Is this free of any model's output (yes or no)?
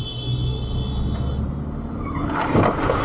yes